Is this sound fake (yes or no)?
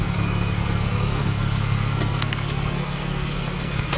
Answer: yes